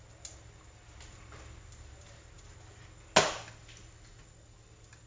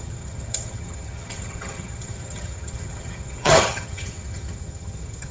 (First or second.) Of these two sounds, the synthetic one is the second